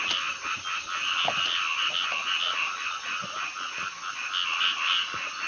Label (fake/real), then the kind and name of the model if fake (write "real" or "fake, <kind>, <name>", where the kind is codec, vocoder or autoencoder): real